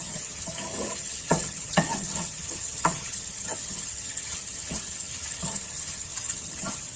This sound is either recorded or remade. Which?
remade